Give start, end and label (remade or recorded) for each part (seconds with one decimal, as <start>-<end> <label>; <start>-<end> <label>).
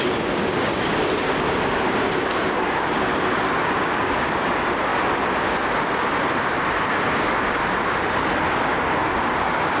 0.0-4.9 remade; 4.9-7.0 recorded; 7.0-7.6 remade; 7.6-8.5 recorded; 8.5-9.8 remade